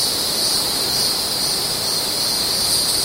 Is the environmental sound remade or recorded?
remade